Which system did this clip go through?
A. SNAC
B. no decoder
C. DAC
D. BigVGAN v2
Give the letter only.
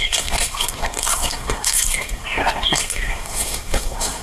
A